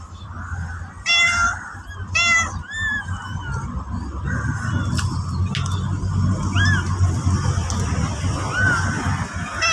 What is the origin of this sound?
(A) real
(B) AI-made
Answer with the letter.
A